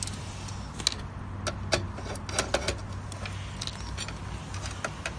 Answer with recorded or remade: recorded